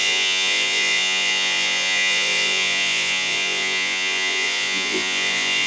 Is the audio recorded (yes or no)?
no